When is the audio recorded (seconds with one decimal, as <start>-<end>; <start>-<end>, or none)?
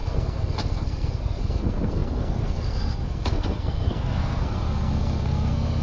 none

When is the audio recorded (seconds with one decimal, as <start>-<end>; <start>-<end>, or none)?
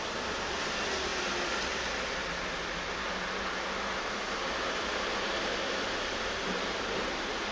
0.0-7.5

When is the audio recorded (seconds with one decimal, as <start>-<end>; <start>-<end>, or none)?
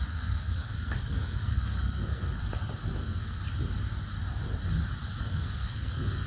2.4-3.0; 3.4-5.2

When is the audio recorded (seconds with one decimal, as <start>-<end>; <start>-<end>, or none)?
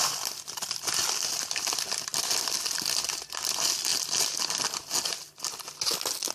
0.0-6.3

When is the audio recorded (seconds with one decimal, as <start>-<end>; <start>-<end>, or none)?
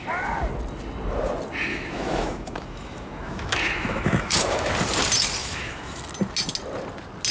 0.0-1.7; 4.7-5.4; 6.0-7.3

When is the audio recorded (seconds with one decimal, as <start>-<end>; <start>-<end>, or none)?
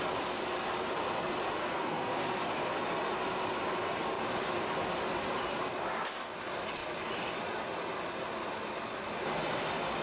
0.0-1.6; 2.7-10.0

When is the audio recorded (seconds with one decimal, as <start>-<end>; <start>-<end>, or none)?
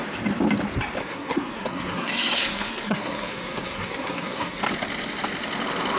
0.0-1.0; 4.6-6.0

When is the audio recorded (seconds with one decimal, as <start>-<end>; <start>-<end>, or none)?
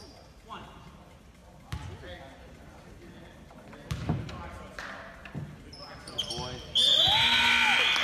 0.0-8.0